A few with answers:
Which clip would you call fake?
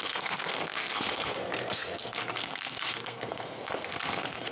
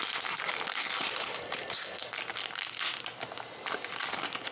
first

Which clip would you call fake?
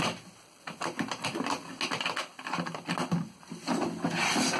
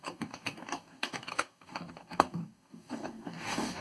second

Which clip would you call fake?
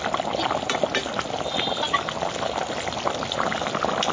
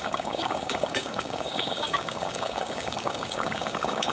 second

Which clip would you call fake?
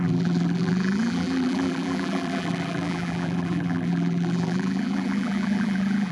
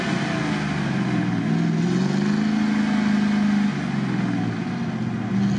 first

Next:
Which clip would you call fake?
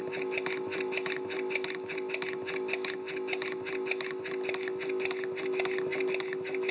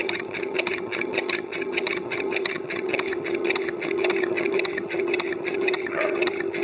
second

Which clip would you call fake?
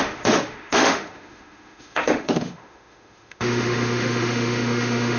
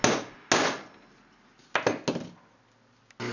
first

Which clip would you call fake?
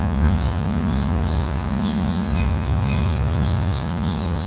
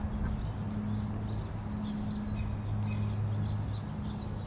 first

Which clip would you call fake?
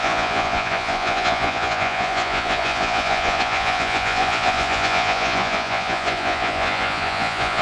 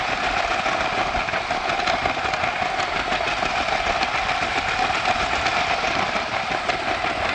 first